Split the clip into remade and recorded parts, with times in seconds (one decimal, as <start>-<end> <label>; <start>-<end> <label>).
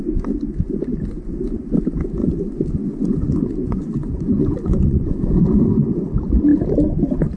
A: 0.0-2.2 recorded; 2.2-6.1 remade; 6.1-7.4 recorded